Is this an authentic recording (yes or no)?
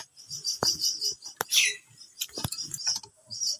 yes